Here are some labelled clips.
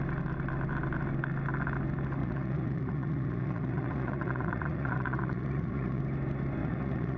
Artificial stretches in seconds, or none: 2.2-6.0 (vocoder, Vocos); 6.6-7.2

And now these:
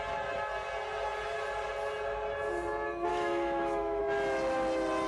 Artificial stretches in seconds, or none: 3.1-4.0 (autoencoder, DAC-VAE)

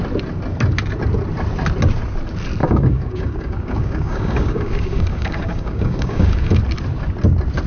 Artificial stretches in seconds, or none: 2.6-6.6 (codec, DAC)

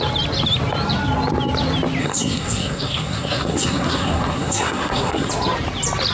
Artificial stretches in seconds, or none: 2.0-5.3 (codec, SNAC)